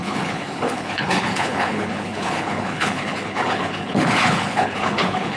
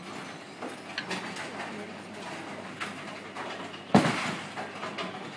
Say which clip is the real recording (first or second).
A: second